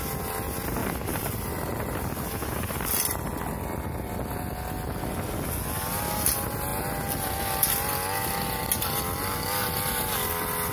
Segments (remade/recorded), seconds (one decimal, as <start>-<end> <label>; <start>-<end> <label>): 0.0-10.7 recorded